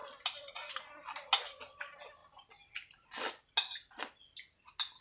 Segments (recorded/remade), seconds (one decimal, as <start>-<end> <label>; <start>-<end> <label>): 0.0-5.0 recorded